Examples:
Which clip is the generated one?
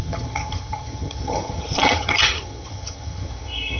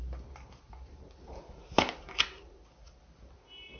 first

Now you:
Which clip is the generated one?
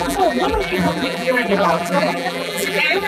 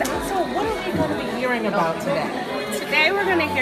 first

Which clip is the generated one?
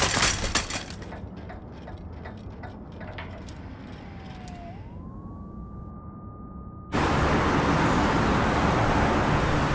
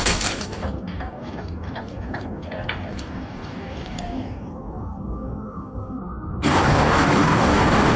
second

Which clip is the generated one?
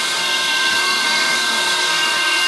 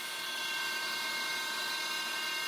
first